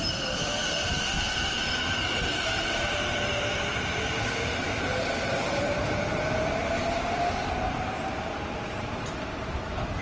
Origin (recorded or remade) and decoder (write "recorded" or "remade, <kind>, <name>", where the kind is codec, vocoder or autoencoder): remade, vocoder, BigVGAN v2